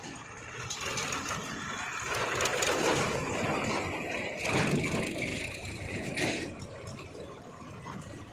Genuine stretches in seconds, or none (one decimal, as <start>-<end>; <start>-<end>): 0.0-2.5; 3.6-5.3; 6.6-8.3